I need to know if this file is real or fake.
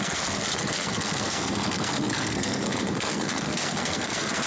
fake